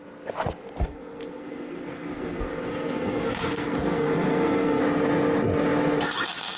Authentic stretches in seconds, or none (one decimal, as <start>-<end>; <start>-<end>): 0.0-0.8; 4.8-6.6

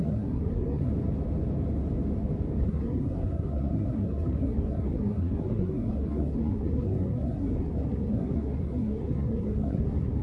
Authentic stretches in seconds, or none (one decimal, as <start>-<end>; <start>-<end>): 0.9-2.6

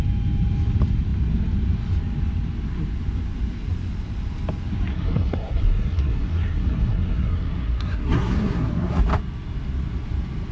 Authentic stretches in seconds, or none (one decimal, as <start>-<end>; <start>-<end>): 0.0-4.9; 9.0-10.5

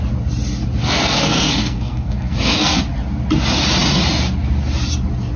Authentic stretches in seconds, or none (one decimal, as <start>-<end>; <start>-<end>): 0.0-0.8; 2.8-5.4

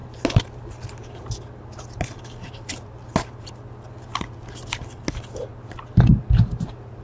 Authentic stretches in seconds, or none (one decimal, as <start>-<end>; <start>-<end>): 0.0-7.0